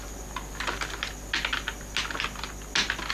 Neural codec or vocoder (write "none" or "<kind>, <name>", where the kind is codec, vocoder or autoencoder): none